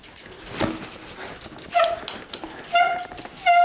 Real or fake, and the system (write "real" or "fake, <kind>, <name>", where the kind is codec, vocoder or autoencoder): real